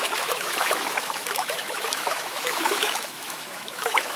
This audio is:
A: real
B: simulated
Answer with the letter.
B